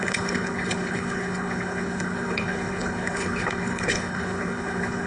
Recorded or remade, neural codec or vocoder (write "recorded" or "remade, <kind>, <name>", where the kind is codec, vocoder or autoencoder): remade, codec, HILCodec